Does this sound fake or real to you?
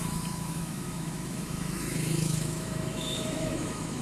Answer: fake